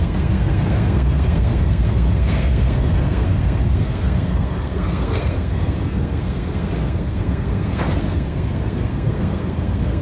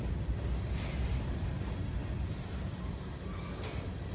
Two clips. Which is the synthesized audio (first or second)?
first